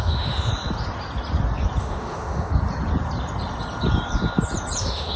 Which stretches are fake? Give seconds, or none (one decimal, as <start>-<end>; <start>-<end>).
0.0-0.5; 1.8-2.5; 4.8-5.2